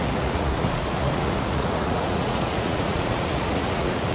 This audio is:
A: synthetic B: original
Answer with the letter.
A